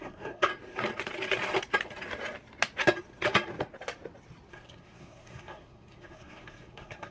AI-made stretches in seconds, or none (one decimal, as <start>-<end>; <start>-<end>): 0.0-0.5; 4.5-7.1